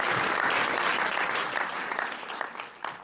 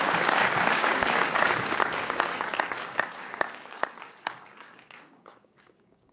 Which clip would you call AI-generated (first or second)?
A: second